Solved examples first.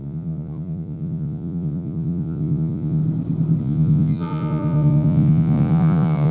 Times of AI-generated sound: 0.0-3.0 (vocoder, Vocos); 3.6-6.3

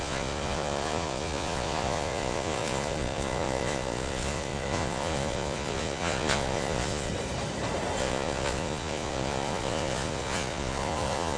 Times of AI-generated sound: 0.0-7.1 (vocoder, Vocos); 8.0-11.4

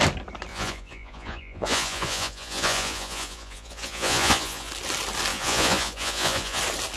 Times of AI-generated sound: 0.5-4.7 (vocoder, Vocos); 5.3-6.6

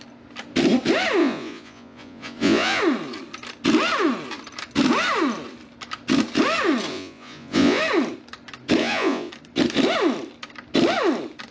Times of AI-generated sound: 1.2-2.8 (vocoder, Vocos); 6.9-7.8; 8.8-9.3

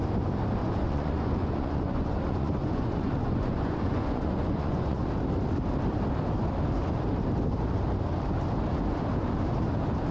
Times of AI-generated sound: 0.6-5.1 (vocoder, Vocos)

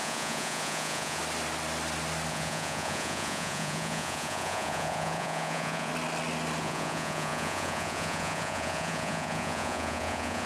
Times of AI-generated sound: 0.0-1.2 (vocoder, Vocos); 2.3-5.9; 6.6-10.5